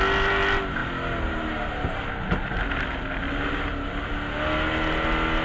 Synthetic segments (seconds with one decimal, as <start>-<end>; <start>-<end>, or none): none

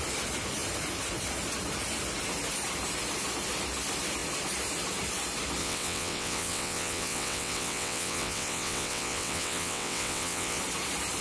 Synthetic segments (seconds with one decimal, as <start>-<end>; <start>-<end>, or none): 5.6-10.6

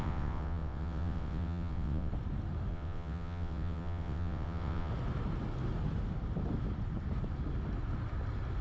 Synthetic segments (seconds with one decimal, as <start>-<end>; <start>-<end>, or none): 0.0-2.1; 2.7-4.9

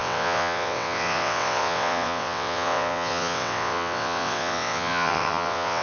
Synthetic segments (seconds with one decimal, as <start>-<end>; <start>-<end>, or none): 0.0-5.8

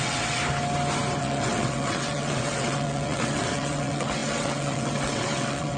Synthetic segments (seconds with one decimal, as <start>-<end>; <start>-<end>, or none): 0.0-0.4; 1.2-5.8

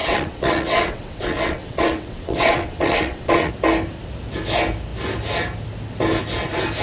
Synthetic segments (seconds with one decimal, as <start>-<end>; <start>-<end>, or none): 0.0-3.5

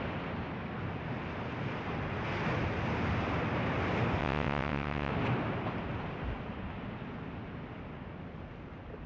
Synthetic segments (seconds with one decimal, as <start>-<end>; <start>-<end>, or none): 4.2-5.1